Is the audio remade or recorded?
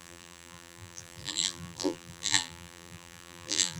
remade